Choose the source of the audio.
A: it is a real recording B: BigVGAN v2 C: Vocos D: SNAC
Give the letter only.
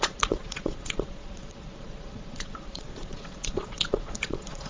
C